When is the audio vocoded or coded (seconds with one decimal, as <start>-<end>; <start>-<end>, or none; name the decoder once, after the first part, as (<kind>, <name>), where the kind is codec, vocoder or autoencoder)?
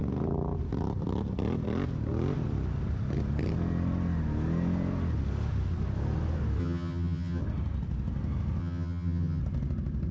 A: 6.6-7.4 (vocoder, HiFi-GAN); 8.6-9.4